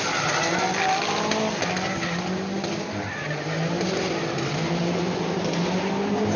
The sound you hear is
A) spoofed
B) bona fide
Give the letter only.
B